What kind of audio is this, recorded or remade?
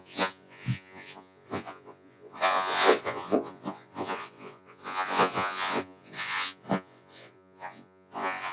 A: remade